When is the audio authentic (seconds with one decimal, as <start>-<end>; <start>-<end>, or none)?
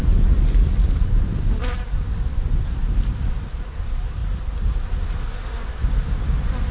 0.0-6.7